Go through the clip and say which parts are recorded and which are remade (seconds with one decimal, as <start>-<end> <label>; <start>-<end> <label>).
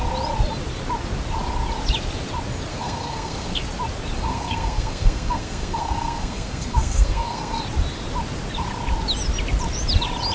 0.0-2.7 recorded; 2.7-3.6 remade; 3.6-4.3 recorded; 4.3-7.6 remade; 7.6-10.3 recorded